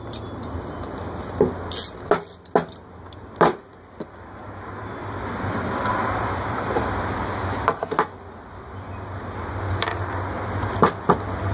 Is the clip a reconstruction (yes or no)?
no